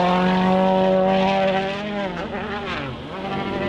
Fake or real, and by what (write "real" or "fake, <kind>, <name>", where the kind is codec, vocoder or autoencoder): real